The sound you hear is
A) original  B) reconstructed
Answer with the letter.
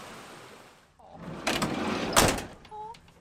A